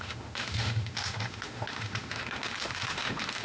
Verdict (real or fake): fake